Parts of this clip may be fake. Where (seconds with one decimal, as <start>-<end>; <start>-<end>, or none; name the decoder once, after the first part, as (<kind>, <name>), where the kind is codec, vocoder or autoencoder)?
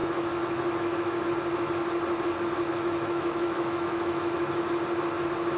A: 0.0-1.2 (autoencoder, DAC-VAE); 2.7-4.7